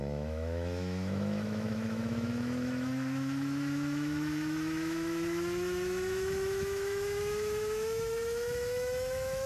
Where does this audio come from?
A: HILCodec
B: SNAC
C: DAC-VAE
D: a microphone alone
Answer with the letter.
C